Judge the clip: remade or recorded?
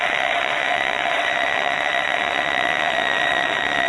remade